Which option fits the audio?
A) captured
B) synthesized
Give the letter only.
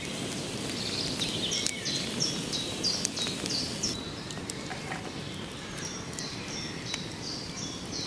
A